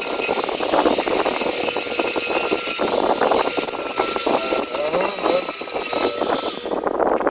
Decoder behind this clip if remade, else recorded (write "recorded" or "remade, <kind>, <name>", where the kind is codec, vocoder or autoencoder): recorded